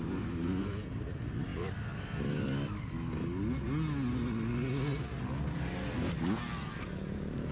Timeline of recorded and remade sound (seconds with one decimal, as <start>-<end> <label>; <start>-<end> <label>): 0.0-7.5 recorded